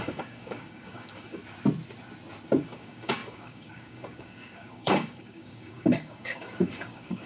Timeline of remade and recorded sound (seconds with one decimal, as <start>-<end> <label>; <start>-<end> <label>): 0.0-1.4 remade; 1.4-2.6 recorded; 2.6-7.3 remade